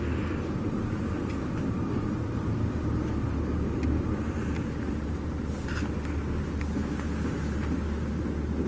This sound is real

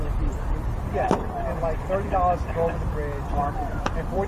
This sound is fake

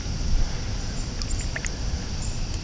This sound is real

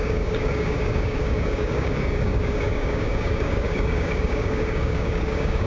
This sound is fake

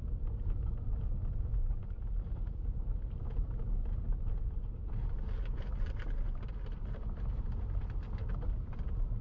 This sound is real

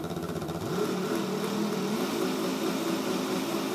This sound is real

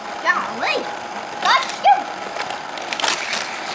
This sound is real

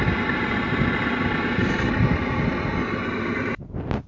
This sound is real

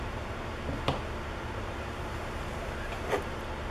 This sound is fake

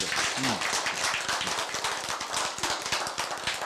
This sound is real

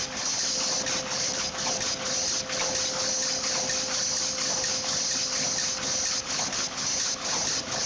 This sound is real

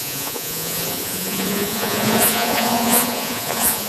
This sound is fake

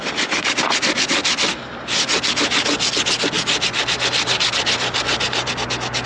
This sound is real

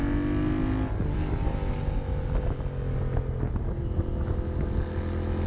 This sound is real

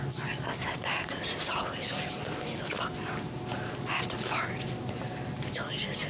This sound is real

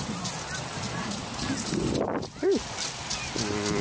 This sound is real